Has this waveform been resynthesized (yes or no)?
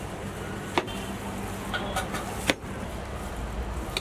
no